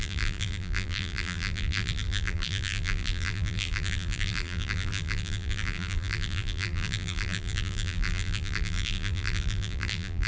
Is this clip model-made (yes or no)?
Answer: yes